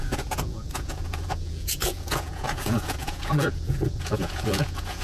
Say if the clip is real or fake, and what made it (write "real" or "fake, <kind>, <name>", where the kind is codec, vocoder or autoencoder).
fake, vocoder, Vocos